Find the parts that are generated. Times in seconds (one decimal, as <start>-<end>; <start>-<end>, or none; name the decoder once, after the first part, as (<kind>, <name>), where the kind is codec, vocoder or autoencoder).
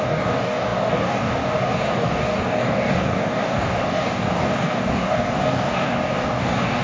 0.0-6.8 (codec, DAC)